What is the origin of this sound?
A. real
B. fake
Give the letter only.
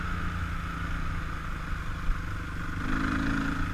A